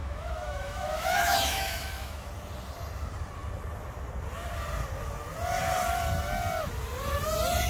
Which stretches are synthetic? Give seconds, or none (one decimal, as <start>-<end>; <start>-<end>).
0.0-2.3